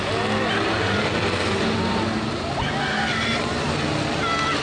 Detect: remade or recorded recorded